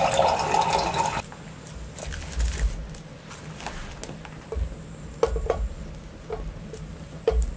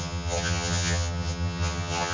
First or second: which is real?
first